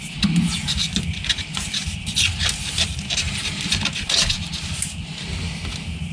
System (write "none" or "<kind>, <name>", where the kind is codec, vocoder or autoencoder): none